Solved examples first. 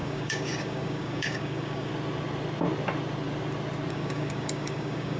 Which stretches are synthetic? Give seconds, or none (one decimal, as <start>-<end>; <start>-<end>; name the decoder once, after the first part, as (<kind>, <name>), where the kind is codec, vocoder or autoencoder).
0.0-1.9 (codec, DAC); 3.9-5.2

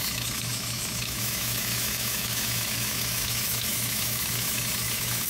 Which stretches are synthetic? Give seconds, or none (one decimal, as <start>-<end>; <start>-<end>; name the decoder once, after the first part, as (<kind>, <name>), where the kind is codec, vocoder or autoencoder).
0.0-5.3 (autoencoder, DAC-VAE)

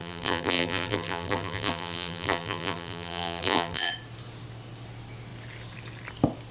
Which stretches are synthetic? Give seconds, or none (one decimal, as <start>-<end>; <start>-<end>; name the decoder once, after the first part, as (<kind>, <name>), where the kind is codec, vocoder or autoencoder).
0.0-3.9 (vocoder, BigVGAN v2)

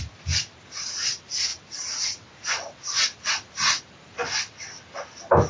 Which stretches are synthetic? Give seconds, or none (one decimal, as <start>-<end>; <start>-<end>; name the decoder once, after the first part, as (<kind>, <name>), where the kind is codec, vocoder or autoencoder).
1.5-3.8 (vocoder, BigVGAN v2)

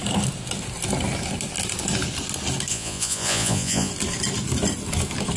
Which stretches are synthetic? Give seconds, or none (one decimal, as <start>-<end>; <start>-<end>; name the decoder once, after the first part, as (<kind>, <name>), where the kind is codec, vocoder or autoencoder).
2.7-3.9 (vocoder, Vocos)